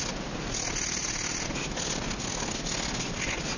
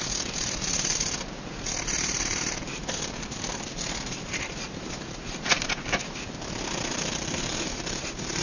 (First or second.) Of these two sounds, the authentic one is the first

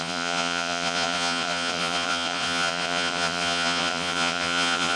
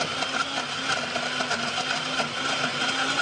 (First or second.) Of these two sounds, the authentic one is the second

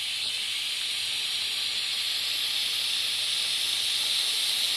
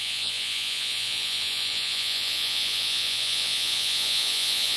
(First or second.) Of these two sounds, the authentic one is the first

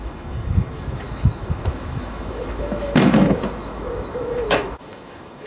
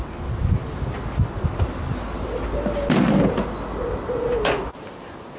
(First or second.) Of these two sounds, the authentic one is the second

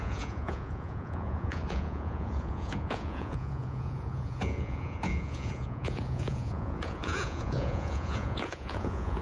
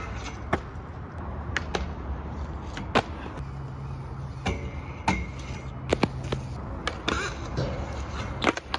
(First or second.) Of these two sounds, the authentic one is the second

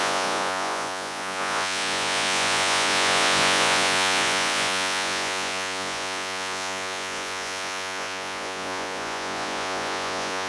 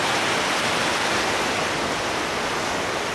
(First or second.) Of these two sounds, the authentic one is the second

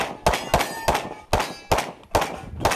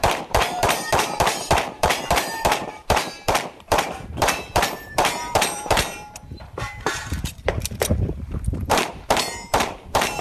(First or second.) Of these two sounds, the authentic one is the first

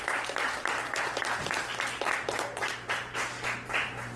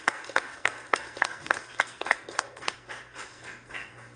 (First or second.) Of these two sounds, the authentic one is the first